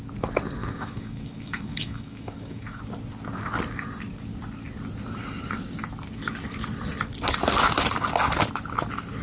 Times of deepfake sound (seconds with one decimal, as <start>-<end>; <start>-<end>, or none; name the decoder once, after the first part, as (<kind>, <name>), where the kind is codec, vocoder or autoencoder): 0.6-2.8 (autoencoder, DAC-VAE)